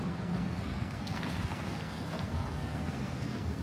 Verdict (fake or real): fake